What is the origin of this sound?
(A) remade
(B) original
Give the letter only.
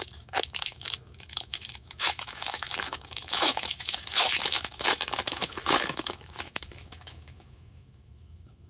A